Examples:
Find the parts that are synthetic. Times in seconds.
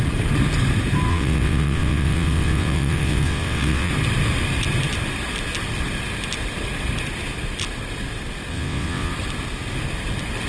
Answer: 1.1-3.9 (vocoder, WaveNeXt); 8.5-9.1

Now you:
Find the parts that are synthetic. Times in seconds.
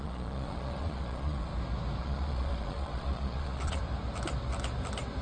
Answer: 0.0-1.5 (vocoder, Vocos); 2.0-3.8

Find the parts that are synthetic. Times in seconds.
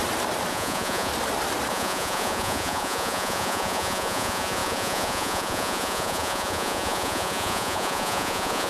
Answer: 0.5-1.1 (vocoder, Vocos); 1.7-8.7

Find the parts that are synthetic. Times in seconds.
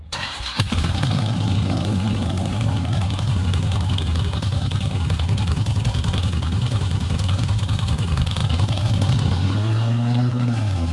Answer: 0.0-10.9 (codec, SNAC)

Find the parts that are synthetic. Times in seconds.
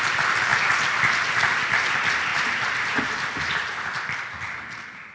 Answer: 2.3-3.0 (vocoder, BigVGAN v2)